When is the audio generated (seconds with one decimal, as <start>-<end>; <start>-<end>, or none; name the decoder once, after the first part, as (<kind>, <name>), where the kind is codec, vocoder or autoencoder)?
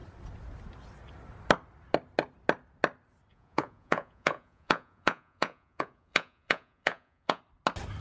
3.3-7.4 (vocoder, Vocos)